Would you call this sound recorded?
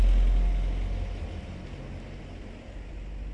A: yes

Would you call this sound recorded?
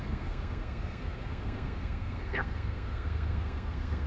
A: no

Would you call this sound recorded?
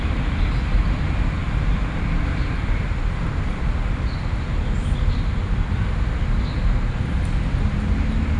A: yes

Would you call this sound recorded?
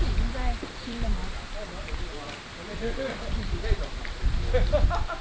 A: yes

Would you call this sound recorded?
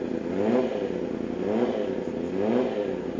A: yes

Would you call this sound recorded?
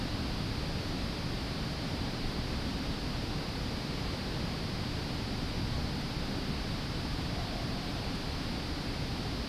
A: yes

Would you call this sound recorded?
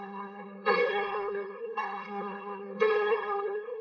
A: no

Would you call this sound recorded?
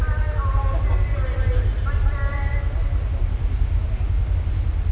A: yes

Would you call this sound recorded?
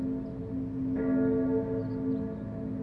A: yes